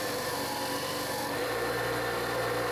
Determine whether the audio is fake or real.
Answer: real